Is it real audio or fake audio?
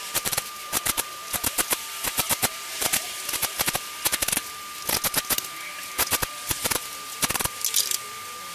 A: real